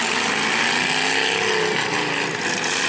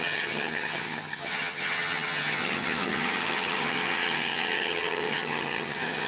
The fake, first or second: second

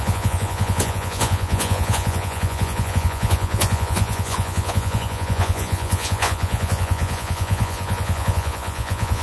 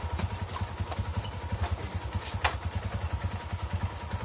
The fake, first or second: first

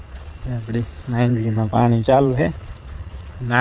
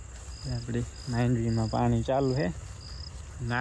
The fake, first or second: first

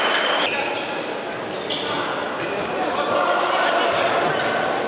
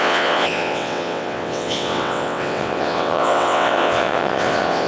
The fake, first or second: second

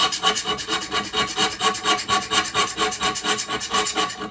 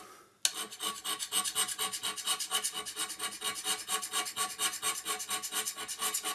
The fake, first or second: first